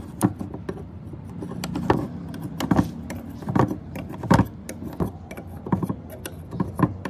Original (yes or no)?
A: yes